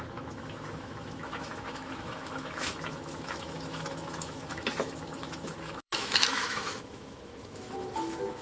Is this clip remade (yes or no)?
yes